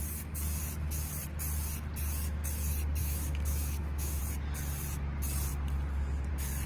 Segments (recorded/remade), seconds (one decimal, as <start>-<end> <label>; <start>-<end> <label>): 0.0-3.0 recorded; 3.0-4.2 remade; 4.2-6.7 recorded